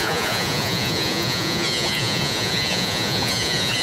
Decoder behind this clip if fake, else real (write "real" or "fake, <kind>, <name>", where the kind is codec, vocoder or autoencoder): fake, vocoder, Vocos